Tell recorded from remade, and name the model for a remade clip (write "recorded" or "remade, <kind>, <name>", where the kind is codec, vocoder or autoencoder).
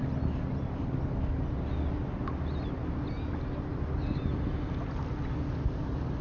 recorded